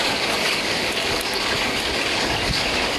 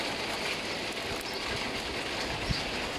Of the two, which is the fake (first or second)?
first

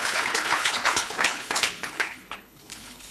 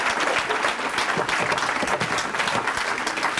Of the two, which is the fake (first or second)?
first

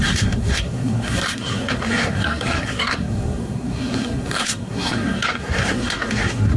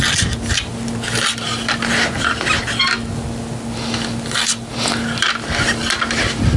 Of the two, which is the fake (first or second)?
first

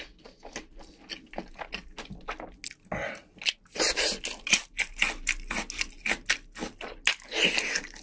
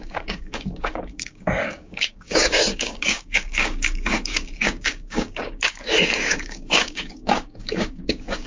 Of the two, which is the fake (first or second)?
second